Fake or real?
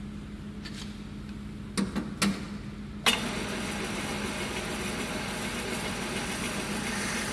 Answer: real